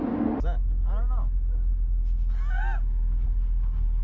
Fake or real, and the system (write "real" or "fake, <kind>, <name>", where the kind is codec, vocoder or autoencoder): real